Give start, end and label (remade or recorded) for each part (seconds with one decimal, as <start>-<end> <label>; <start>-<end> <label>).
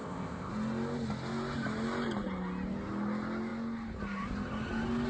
0.0-0.5 remade; 0.5-5.1 recorded